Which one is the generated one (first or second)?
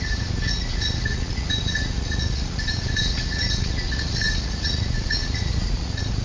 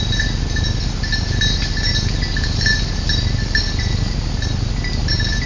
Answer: first